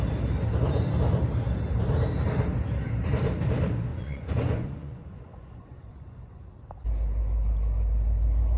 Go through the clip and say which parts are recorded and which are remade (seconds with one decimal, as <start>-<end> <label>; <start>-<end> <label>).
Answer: 0.0-3.9 recorded; 3.9-6.5 remade; 6.5-8.6 recorded